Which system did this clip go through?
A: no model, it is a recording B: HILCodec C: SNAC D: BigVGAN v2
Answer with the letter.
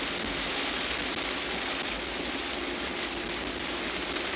A